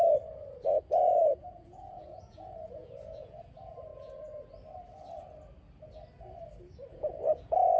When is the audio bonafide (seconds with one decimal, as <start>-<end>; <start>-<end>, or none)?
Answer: 0.0-1.0; 3.5-3.9; 4.5-6.9